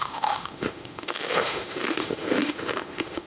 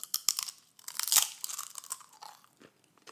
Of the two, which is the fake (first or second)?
first